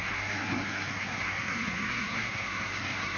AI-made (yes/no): yes